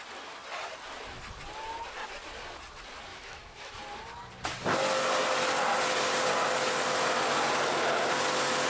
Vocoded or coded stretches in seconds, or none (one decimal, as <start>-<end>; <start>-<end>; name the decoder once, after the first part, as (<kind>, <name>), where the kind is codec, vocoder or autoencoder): 3.1-3.8 (autoencoder, DAC-VAE)